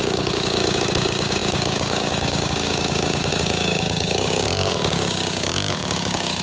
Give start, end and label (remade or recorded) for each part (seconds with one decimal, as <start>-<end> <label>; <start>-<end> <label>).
0.0-6.4 remade